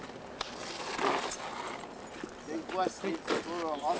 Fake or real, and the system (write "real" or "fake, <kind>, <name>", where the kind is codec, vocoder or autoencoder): real